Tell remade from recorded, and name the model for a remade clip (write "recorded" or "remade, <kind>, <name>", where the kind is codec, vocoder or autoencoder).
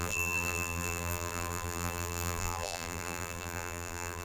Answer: remade, vocoder, BigVGAN v2